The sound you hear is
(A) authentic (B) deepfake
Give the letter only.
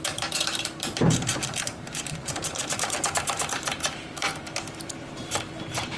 B